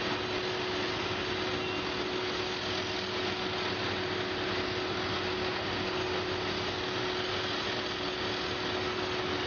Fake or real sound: real